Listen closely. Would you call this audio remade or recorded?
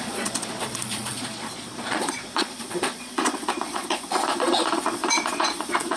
remade